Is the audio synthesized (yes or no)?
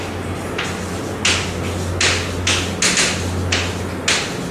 no